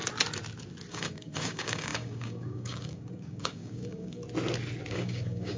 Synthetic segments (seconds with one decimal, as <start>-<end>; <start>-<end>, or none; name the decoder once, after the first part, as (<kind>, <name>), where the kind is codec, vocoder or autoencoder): 0.9-4.2 (codec, DAC); 4.9-5.6